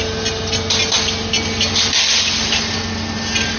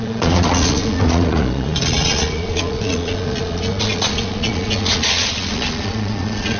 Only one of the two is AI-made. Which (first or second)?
second